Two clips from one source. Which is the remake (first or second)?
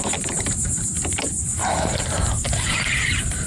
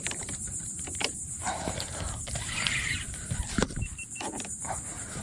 second